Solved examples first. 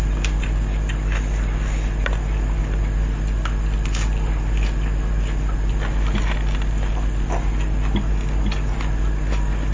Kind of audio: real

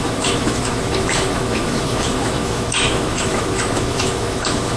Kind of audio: fake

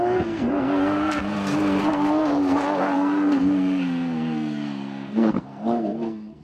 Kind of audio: fake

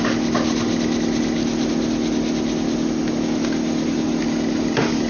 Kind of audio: real